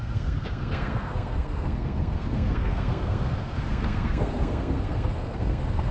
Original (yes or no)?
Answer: no